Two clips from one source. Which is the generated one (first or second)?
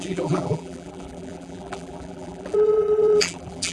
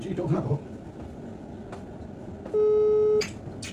first